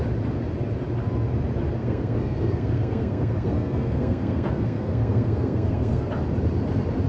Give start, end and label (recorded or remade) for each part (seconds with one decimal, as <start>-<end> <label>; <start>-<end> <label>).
0.0-1.8 recorded; 1.8-6.1 remade; 6.1-7.1 recorded